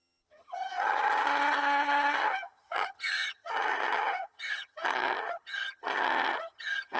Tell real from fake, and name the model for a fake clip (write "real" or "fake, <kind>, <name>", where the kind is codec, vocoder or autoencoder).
fake, vocoder, HiFi-GAN